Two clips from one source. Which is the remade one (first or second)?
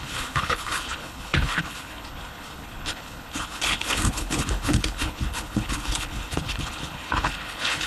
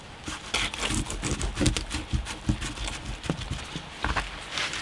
first